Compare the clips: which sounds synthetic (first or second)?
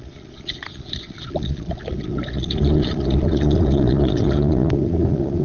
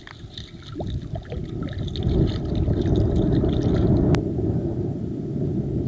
first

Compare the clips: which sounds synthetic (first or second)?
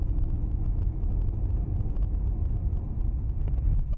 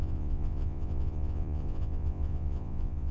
second